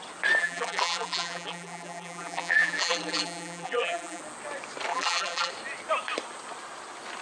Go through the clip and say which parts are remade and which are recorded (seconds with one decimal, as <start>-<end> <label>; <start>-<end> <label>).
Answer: 0.0-0.4 recorded; 0.4-4.2 remade; 4.2-4.9 recorded; 4.9-5.5 remade; 5.5-7.2 recorded